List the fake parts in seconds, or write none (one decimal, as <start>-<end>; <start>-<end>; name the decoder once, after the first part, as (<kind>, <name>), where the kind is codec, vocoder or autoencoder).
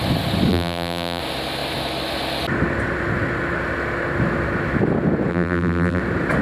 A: 0.5-1.2 (vocoder, BigVGAN v2); 5.3-6.0